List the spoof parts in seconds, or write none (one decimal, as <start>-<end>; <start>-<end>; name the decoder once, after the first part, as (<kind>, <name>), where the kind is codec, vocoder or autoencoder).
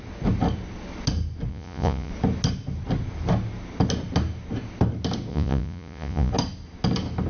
1.5-2.1 (vocoder, Vocos); 5.3-6.3